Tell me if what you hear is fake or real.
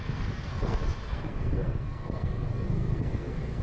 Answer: fake